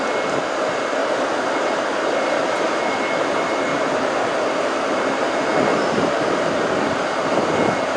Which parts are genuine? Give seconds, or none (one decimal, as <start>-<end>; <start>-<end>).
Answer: 0.0-3.7; 5.3-5.7; 6.8-8.0